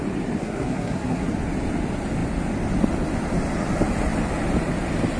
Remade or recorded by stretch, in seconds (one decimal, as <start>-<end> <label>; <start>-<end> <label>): 0.0-0.4 recorded; 0.4-1.3 remade; 1.3-5.2 recorded